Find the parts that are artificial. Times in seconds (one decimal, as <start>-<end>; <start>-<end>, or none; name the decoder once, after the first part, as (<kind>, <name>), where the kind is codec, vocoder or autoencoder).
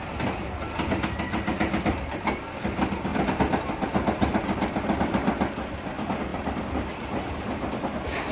none